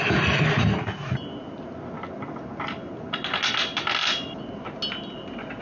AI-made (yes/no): no